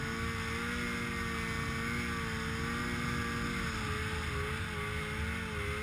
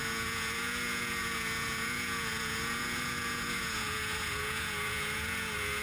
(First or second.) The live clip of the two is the first